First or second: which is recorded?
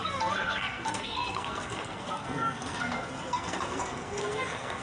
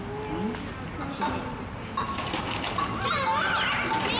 second